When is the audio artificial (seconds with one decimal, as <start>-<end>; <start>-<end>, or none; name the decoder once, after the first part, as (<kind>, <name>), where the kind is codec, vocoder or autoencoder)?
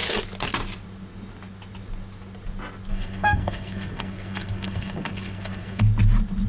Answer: 2.9-5.8 (codec, SNAC)